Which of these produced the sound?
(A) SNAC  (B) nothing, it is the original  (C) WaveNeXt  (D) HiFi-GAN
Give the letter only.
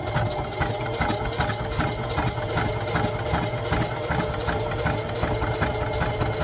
B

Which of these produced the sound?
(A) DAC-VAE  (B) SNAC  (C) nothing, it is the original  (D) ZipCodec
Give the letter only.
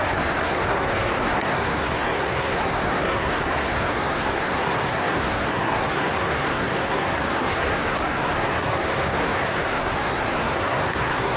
B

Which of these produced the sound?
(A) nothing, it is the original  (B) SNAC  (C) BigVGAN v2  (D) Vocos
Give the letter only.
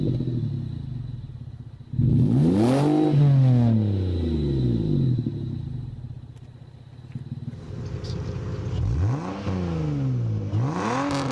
A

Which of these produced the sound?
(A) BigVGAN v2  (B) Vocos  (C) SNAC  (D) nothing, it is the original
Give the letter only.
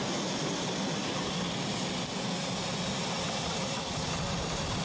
D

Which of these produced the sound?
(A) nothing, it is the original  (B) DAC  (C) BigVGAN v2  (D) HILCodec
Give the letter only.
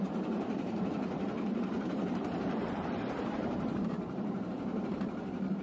C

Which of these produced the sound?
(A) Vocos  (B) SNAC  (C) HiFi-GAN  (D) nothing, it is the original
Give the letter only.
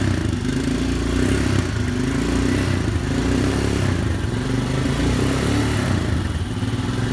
D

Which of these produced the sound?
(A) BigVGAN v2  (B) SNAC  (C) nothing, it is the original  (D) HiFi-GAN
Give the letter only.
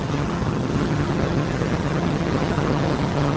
D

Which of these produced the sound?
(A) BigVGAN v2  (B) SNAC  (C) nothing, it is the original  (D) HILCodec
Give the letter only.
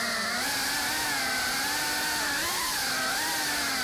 A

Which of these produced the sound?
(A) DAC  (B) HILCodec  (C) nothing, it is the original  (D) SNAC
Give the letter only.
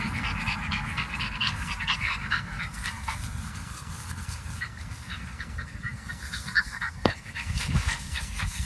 D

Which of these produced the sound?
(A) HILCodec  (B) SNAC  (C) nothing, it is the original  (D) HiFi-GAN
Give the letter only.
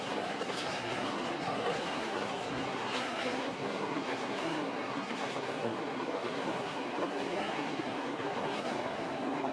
B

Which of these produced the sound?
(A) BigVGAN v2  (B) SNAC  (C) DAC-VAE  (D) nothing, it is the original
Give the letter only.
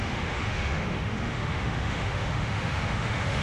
C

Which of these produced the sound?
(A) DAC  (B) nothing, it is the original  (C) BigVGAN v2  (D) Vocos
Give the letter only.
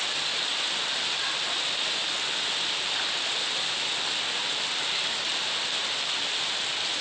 B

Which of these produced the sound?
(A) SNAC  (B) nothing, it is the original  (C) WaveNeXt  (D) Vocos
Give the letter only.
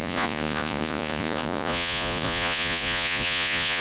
D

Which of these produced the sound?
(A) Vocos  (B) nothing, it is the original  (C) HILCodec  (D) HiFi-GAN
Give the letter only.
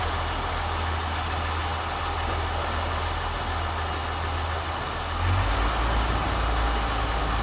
B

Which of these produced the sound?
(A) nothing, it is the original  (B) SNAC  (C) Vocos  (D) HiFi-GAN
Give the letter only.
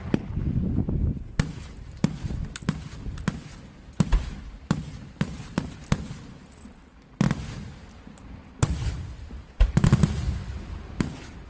A